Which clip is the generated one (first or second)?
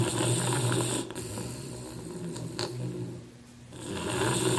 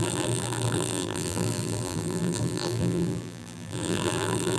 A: second